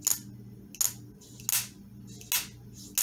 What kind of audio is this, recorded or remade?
recorded